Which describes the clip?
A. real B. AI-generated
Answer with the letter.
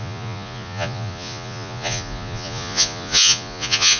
B